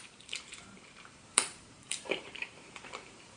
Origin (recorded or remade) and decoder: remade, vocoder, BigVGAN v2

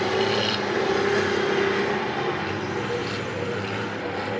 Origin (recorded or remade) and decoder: recorded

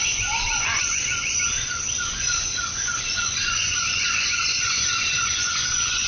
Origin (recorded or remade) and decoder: remade, vocoder, Vocos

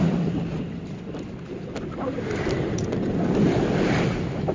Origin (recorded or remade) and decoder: remade, vocoder, BigVGAN v2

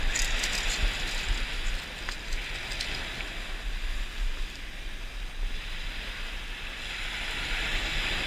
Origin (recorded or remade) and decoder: recorded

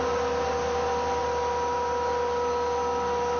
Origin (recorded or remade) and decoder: recorded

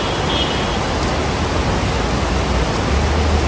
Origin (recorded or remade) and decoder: recorded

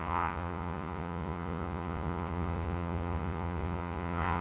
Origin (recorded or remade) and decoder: remade, vocoder, Vocos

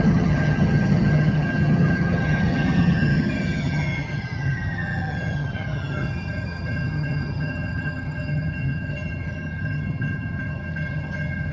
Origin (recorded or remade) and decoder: remade, vocoder, HiFi-GAN